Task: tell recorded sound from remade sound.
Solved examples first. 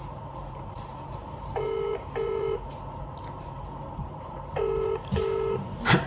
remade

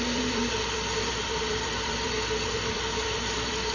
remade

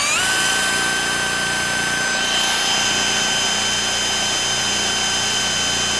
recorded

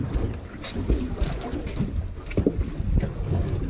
recorded